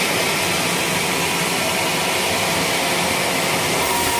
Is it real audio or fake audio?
real